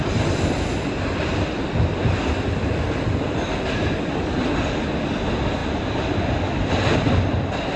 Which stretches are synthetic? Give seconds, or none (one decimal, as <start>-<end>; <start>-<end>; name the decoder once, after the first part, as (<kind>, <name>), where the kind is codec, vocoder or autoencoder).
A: none